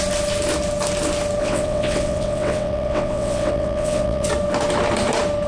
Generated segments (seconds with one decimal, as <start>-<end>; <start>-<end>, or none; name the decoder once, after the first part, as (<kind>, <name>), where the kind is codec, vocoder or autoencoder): 1.4-4.3 (vocoder, WaveNeXt)